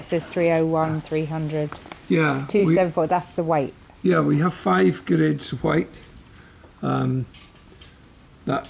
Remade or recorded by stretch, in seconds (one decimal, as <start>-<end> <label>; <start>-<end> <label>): 0.0-8.7 recorded